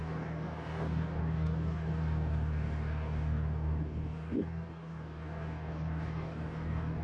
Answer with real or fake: fake